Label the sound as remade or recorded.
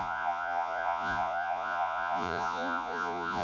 remade